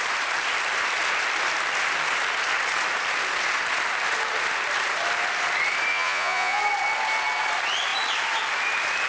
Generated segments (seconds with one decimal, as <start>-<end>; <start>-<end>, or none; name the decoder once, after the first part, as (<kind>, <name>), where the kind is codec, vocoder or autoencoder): 5.9-6.6 (vocoder, Vocos)